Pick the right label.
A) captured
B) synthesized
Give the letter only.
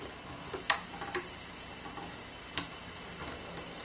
A